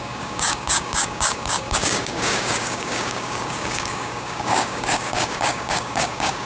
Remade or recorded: remade